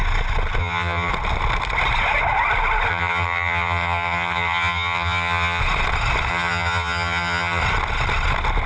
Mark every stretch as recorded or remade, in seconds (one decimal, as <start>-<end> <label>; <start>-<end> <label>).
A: 0.0-0.6 recorded; 0.6-1.1 remade; 1.1-2.9 recorded; 2.9-5.6 remade; 5.6-6.3 recorded; 6.3-7.6 remade; 7.6-8.7 recorded